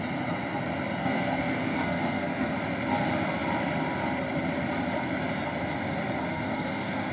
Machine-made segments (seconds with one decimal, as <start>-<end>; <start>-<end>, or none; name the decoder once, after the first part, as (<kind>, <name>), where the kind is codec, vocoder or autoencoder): 1.0-2.5 (codec, SNAC); 6.3-7.1